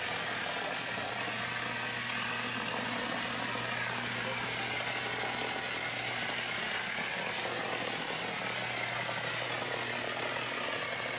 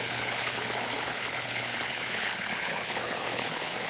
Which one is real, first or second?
first